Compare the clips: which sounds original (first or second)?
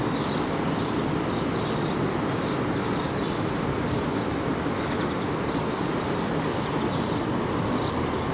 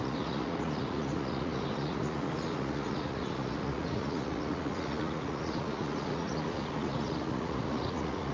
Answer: first